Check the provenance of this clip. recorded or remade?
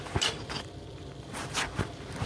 recorded